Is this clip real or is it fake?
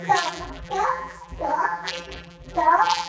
fake